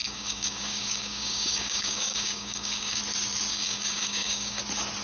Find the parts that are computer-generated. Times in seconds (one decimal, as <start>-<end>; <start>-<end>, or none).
0.0-3.0; 3.5-4.6